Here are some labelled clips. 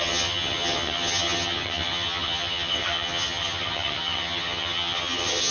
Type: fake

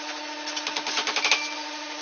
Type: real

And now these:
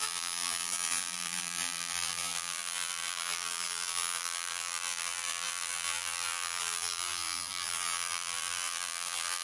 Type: fake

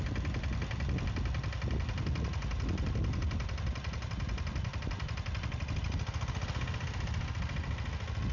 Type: real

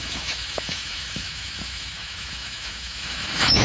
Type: fake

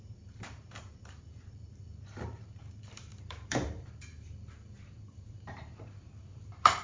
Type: fake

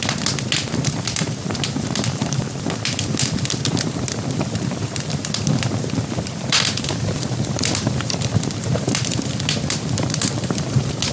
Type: fake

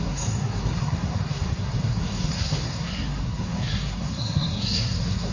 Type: fake